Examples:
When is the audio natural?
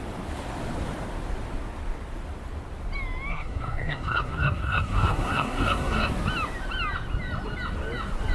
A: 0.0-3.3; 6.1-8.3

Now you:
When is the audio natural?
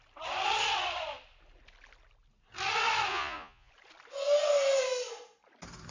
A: 0.0-3.1; 3.7-5.9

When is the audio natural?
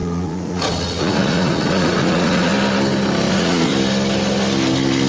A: 2.5-3.3; 3.7-5.1